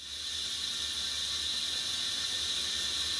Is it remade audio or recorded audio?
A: recorded